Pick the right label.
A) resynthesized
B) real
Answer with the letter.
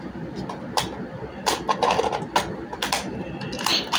B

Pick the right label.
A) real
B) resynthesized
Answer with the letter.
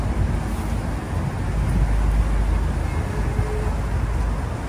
A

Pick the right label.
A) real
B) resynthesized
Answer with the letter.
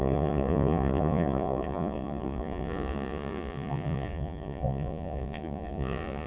B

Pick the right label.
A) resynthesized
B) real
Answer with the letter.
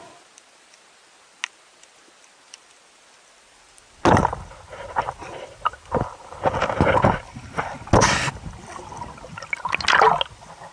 B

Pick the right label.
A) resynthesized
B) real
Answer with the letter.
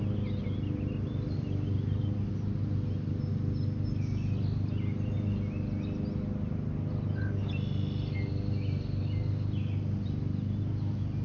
B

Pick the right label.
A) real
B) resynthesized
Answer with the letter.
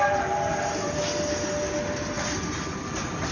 A